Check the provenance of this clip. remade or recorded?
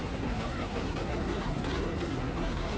remade